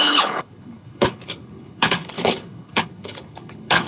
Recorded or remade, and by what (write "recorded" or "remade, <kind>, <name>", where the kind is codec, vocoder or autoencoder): remade, codec, HILCodec